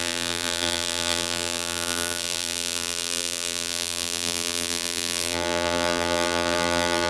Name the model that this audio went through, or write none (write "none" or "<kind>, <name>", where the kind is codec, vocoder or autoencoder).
vocoder, BigVGAN v2